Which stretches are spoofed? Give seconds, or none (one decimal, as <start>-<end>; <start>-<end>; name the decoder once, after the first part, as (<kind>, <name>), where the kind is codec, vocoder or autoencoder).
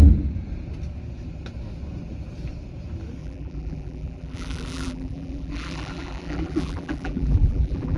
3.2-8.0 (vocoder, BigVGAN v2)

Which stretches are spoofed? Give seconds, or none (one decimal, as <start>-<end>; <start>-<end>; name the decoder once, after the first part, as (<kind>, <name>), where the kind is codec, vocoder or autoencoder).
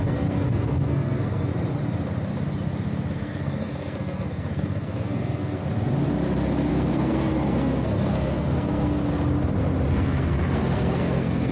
0.0-1.5 (codec, SNAC); 3.1-5.6; 6.7-9.0; 9.9-11.5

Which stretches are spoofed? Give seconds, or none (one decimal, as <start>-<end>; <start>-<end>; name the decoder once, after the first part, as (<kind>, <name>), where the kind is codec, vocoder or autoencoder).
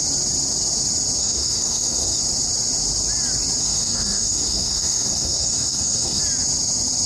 1.2-2.2 (codec, SNAC); 3.6-6.2